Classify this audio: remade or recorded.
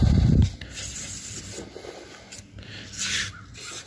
recorded